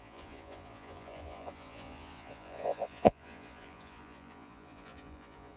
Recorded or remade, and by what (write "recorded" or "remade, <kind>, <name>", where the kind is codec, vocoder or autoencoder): remade, vocoder, Vocos